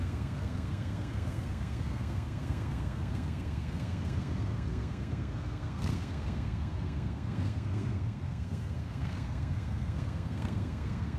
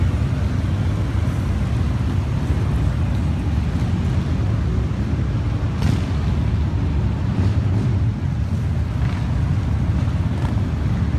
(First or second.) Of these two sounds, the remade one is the first